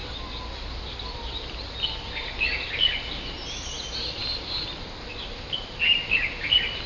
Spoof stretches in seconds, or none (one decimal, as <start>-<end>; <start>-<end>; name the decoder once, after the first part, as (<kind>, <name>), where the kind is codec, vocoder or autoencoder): 0.0-2.7 (vocoder, BigVGAN v2); 4.2-4.8